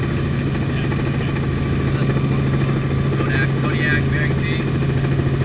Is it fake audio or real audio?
real